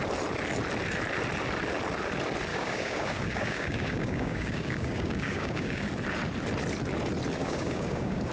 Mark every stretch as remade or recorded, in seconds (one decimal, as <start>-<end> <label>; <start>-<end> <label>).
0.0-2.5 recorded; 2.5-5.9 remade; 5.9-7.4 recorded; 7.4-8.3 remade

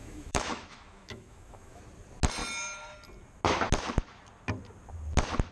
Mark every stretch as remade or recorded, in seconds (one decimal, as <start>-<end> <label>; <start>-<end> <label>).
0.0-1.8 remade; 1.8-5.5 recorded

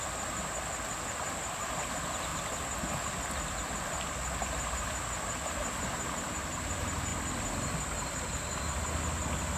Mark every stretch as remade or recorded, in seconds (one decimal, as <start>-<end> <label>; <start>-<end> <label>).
0.0-2.3 recorded; 2.3-4.1 remade; 4.1-9.6 recorded

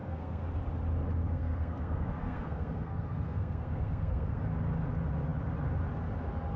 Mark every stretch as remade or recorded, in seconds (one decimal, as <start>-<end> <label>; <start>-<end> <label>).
0.0-0.6 remade; 0.6-1.2 recorded; 1.2-4.4 remade; 4.4-6.6 recorded

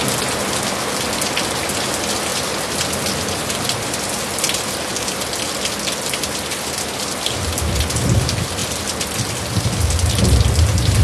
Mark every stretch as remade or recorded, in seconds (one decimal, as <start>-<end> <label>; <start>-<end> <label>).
0.0-11.0 recorded

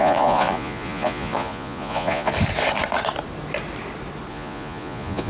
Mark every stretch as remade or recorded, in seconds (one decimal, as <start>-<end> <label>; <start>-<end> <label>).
0.0-2.3 remade; 2.3-4.3 recorded; 4.3-5.3 remade

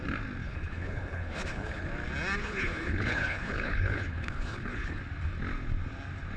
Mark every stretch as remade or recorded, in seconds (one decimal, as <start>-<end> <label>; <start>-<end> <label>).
0.0-0.4 recorded; 0.4-1.9 remade; 1.9-2.4 recorded; 2.4-5.0 remade; 5.0-6.4 recorded

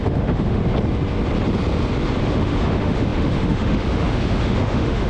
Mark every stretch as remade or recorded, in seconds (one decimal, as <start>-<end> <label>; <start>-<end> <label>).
0.0-0.6 remade; 0.6-2.2 recorded; 2.2-5.1 remade